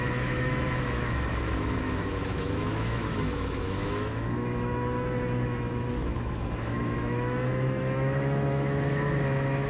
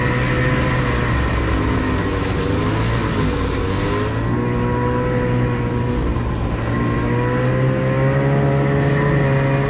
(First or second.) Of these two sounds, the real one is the second